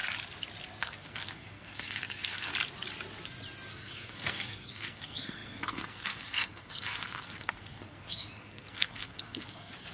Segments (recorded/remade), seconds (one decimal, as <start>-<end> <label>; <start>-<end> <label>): 0.0-0.8 recorded; 0.8-2.5 remade; 2.5-3.7 recorded; 3.7-9.9 remade